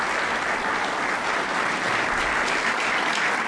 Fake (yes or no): no